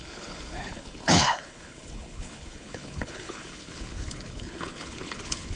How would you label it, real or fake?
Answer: fake